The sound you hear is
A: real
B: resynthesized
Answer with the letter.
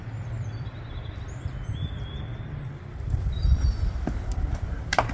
B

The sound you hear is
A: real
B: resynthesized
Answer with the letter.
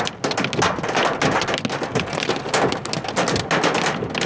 A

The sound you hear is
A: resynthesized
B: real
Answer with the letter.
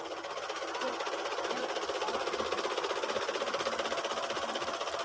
B